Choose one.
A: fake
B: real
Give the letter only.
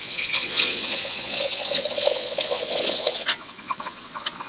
A